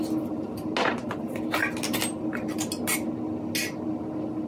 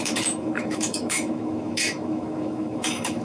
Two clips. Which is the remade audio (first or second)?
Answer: second